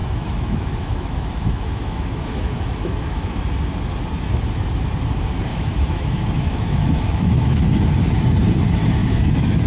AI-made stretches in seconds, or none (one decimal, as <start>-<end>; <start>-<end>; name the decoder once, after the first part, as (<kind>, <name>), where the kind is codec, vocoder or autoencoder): 0.0-3.4 (autoencoder, DAC-VAE); 5.5-7.6; 9.0-9.7